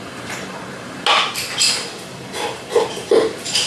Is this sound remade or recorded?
recorded